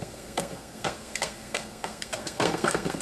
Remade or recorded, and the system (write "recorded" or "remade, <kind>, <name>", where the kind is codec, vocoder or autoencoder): remade, codec, SNAC